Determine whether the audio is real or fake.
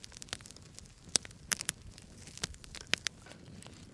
real